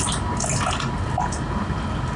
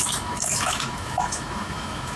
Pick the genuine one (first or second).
first